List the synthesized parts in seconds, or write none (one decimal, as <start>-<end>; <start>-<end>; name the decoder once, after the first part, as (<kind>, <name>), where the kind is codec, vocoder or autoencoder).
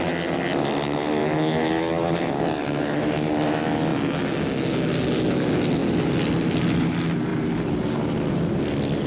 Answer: 1.2-1.7 (autoencoder, DAC-VAE)